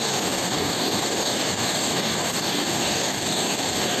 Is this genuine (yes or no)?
no